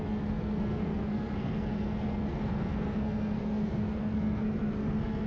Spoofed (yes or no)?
yes